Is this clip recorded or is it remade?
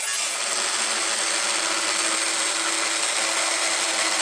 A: recorded